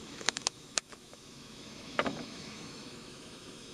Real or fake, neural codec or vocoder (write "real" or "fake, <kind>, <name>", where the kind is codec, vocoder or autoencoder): fake, autoencoder, DAC-VAE